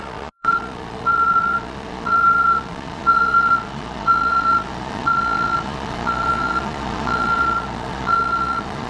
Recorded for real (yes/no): no